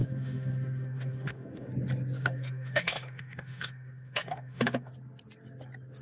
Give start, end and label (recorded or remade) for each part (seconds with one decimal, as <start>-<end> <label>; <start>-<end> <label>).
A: 0.0-1.7 remade; 1.7-2.2 recorded; 2.2-4.9 remade; 4.9-6.0 recorded